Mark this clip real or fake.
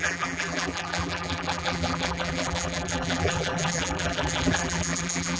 fake